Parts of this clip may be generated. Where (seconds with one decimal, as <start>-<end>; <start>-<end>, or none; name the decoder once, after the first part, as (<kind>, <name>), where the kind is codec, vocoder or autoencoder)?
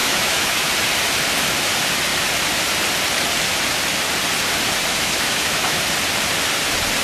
0.0-0.7 (autoencoder, DAC-VAE); 4.9-5.8